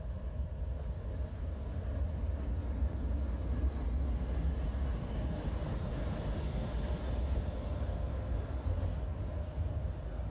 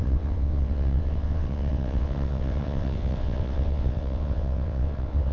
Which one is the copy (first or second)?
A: second